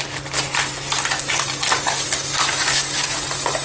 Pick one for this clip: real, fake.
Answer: real